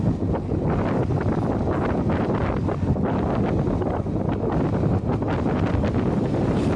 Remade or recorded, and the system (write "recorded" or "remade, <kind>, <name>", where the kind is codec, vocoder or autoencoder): recorded